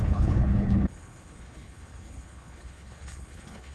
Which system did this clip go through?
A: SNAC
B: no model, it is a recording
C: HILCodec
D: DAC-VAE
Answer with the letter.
C